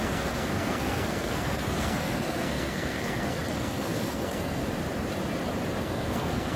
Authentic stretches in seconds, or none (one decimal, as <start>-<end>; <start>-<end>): 4.6-5.8